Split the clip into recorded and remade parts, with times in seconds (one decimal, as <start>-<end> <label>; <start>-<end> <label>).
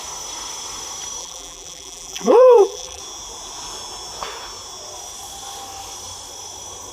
0.0-1.2 recorded; 1.2-3.0 remade; 3.0-6.9 recorded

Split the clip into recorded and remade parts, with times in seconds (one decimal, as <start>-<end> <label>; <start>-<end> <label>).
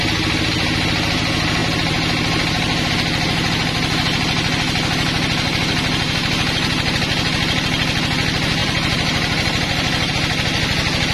0.0-8.6 recorded; 8.6-10.1 remade; 10.1-11.1 recorded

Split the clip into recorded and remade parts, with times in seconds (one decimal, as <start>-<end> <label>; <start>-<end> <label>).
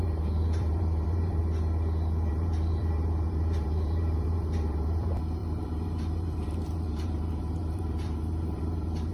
0.0-1.4 remade; 1.4-2.3 recorded; 2.3-9.1 remade